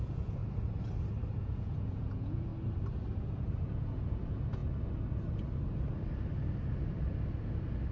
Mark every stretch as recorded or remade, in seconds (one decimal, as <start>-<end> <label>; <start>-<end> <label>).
0.0-0.4 remade; 0.4-1.4 recorded; 1.4-2.5 remade; 2.5-3.2 recorded; 3.2-4.6 remade; 4.6-7.9 recorded